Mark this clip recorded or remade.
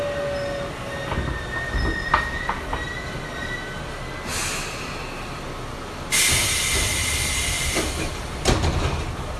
recorded